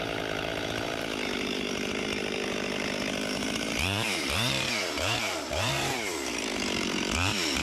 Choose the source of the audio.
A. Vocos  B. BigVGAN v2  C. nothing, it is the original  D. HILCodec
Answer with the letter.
B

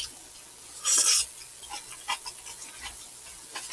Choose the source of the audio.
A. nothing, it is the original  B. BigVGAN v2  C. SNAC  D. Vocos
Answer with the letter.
A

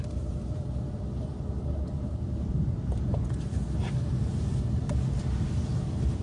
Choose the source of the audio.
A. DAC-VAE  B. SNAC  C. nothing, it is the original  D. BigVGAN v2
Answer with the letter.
D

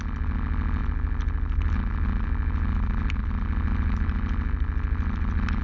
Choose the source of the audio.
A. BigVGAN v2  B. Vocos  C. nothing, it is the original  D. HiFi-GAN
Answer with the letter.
C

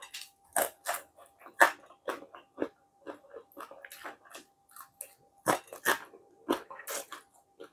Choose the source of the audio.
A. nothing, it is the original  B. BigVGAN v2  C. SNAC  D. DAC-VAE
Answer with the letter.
A